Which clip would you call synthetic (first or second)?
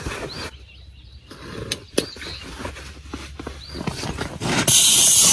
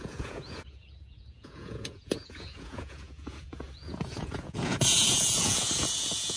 second